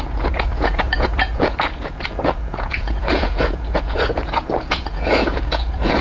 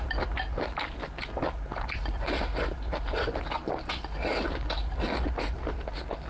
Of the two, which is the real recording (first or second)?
second